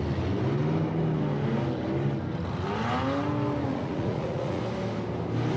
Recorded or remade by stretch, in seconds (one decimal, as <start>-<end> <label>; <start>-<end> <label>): 0.0-3.7 recorded; 3.7-4.6 remade; 4.6-5.6 recorded